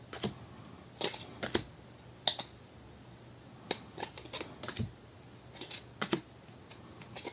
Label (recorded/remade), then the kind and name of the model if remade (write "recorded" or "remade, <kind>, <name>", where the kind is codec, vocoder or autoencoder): recorded